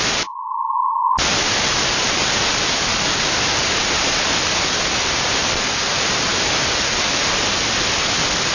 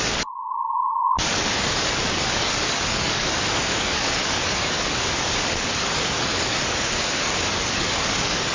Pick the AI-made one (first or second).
second